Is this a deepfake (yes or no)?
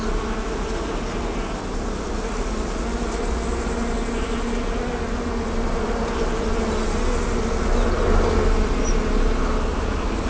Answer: no